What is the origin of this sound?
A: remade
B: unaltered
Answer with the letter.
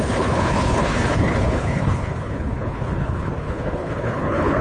A